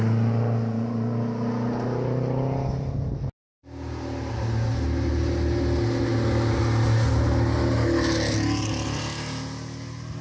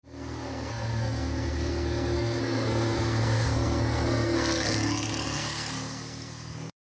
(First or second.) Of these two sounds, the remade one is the second